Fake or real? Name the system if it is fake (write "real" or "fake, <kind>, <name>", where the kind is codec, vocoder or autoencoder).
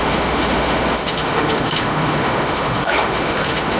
fake, autoencoder, DAC-VAE